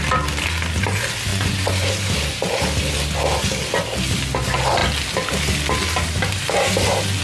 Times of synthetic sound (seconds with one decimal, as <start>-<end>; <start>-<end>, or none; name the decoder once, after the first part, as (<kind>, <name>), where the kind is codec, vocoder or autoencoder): 1.3-1.9 (vocoder, Vocos)